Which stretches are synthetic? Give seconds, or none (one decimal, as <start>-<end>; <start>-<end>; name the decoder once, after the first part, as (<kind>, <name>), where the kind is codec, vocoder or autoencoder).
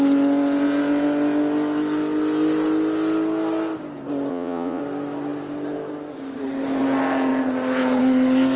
4.3-4.8 (vocoder, Vocos)